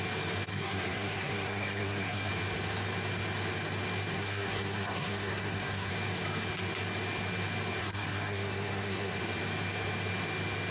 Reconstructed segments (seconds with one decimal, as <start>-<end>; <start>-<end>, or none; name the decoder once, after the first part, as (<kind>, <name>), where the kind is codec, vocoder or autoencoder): 0.5-2.3 (codec, SNAC); 4.1-5.9; 7.8-9.2